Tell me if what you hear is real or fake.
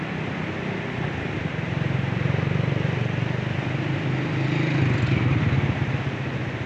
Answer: real